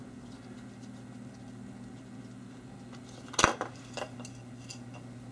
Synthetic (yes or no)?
no